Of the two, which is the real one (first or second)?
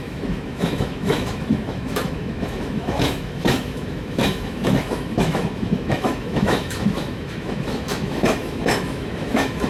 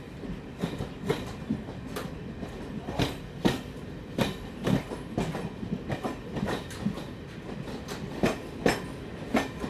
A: second